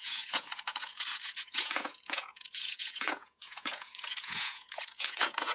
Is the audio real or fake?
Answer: fake